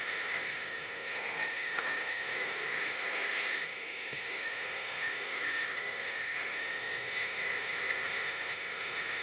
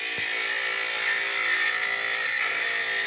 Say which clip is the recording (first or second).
second